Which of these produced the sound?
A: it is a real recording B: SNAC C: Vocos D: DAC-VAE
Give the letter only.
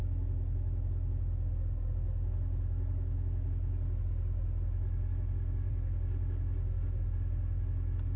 A